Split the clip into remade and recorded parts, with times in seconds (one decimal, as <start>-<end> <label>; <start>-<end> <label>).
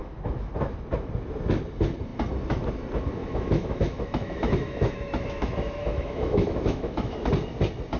0.0-0.5 remade; 0.5-3.2 recorded; 3.2-7.3 remade; 7.3-8.0 recorded